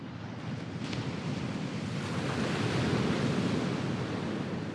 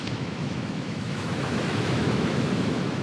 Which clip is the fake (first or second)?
second